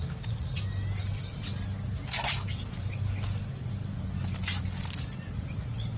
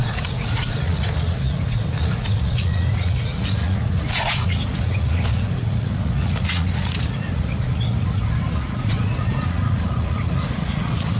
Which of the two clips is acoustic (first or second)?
first